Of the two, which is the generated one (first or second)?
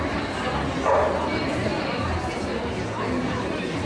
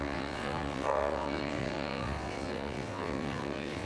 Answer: second